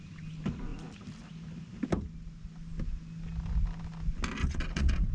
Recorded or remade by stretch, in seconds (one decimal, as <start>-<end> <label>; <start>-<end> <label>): 0.0-4.4 recorded; 4.4-5.1 remade